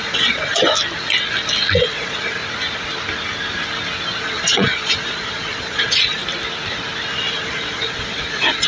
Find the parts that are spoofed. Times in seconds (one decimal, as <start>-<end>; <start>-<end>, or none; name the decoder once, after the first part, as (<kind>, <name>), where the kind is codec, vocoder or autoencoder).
0.0-0.5 (vocoder, Vocos); 1.8-2.4; 4.2-6.2; 7.1-8.7